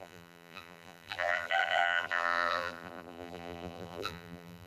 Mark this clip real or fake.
fake